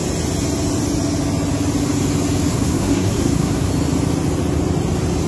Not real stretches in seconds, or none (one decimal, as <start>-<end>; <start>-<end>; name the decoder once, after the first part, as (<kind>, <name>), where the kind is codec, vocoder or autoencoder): 2.5-3.7 (codec, SNAC)